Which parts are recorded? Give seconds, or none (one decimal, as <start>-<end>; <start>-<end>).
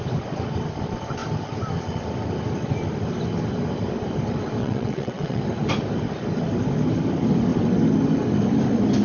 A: 0.0-4.6; 5.4-9.0